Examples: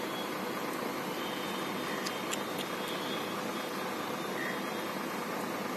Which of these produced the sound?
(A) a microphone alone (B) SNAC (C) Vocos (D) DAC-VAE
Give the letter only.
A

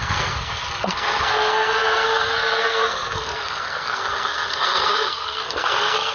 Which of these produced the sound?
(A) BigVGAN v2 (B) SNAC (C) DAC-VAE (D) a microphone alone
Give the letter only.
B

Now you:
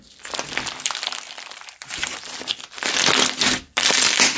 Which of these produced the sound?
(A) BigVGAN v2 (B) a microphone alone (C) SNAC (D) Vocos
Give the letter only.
B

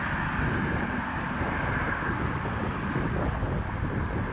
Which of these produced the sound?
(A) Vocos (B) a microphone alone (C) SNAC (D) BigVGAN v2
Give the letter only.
B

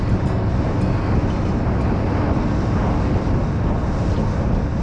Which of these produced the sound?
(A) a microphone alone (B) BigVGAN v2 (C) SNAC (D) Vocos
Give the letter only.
A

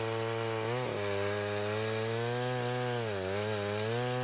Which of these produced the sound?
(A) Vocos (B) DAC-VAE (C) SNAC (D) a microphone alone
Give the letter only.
D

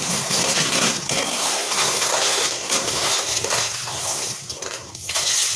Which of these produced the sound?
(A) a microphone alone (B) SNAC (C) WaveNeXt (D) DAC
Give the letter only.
B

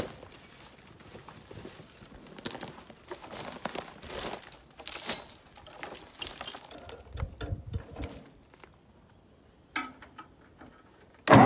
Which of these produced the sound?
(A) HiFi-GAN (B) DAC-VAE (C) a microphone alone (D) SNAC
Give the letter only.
C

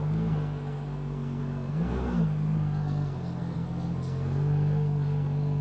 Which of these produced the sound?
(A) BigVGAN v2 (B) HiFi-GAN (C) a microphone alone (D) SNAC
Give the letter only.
D